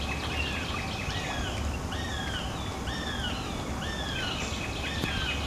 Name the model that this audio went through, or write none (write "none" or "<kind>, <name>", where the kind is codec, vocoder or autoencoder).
none